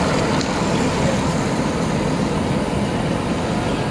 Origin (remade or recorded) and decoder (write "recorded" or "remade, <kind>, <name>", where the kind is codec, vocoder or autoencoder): recorded